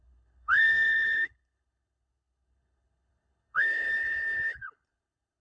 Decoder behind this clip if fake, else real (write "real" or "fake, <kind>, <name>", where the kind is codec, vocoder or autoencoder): fake, codec, HILCodec